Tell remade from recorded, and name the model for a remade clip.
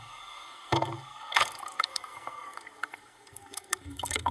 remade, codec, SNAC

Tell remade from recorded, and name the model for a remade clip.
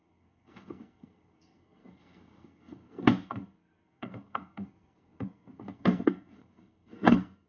remade, codec, SNAC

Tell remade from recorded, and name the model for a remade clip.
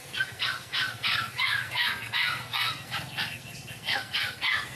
remade, codec, SNAC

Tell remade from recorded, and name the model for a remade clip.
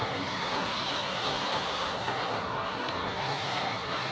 remade, codec, SNAC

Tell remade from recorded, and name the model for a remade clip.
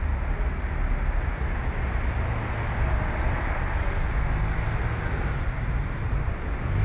recorded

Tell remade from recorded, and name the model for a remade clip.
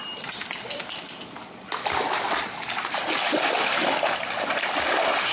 recorded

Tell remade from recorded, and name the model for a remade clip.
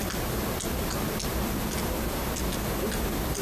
recorded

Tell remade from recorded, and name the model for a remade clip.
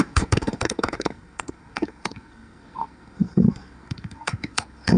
remade, codec, SNAC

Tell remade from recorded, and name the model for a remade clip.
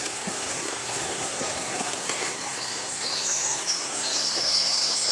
remade, codec, SNAC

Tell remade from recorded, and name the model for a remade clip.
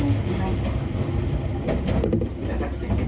recorded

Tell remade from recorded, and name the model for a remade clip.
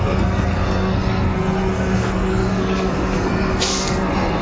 remade, codec, SNAC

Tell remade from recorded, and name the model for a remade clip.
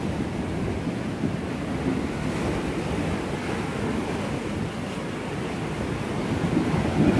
recorded